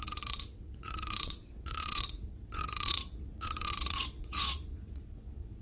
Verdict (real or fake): fake